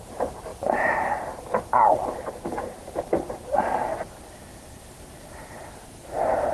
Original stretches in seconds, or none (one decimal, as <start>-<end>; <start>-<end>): none